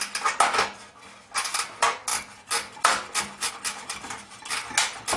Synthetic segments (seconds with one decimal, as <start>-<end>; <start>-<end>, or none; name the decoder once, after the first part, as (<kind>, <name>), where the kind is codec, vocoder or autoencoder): none